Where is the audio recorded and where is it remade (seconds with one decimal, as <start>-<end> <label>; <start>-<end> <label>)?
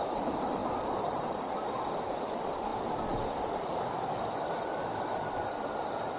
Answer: 0.0-6.2 recorded